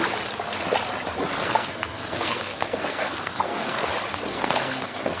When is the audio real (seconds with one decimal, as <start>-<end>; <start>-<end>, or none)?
0.0-1.3; 3.9-4.3